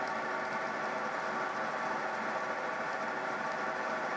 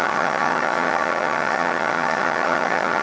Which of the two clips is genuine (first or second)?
first